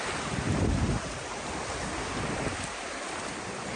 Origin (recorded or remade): recorded